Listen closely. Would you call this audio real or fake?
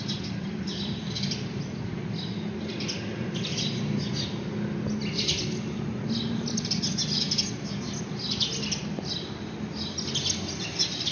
real